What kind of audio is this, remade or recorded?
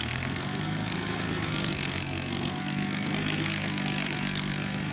remade